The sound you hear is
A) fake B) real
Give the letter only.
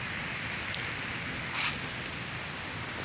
B